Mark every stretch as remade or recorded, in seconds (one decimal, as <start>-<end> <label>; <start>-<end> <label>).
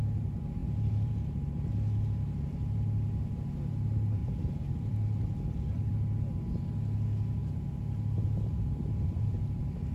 0.0-0.6 recorded; 0.6-1.1 remade; 1.1-4.2 recorded; 4.2-5.9 remade; 5.9-7.4 recorded; 7.4-9.4 remade; 9.4-9.9 recorded